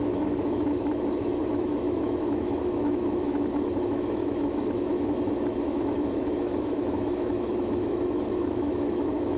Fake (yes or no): yes